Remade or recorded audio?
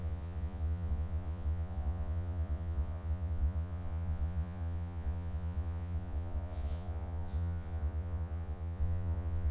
remade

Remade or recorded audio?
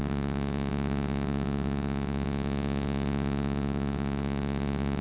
remade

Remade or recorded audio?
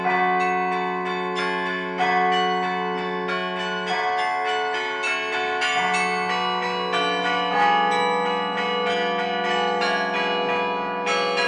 recorded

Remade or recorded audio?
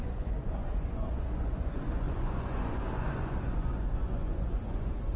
remade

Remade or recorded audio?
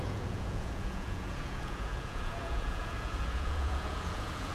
remade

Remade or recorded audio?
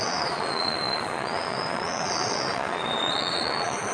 remade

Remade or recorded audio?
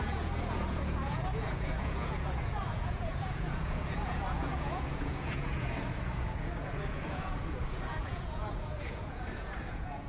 remade